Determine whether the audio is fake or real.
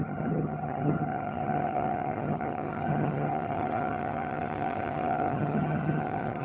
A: fake